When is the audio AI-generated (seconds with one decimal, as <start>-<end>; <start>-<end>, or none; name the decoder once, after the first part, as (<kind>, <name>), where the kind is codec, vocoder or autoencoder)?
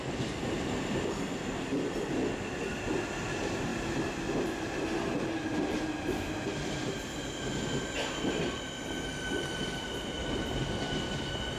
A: none